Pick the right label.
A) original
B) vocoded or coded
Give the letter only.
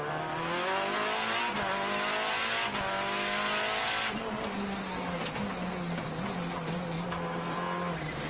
A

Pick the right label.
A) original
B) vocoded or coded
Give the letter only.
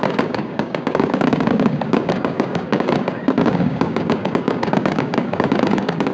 B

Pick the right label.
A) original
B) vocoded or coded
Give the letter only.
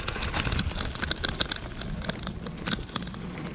A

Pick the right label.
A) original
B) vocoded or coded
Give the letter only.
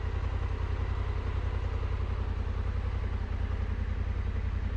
A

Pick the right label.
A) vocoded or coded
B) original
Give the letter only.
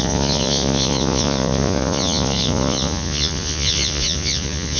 A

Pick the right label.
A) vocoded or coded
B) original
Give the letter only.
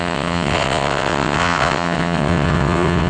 A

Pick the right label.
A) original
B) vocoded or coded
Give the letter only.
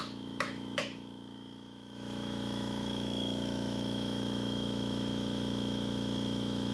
B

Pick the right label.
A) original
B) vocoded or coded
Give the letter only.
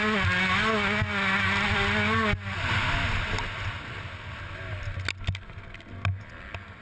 A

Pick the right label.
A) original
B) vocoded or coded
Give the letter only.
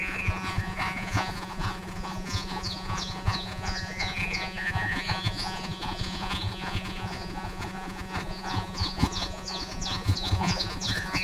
B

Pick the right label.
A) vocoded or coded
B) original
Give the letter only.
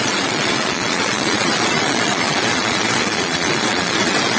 A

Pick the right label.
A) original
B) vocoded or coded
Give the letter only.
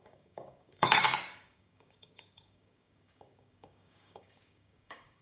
B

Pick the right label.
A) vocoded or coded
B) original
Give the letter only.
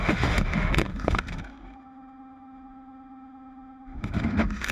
A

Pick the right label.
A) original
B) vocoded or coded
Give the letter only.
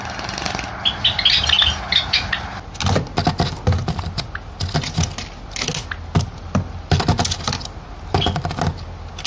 A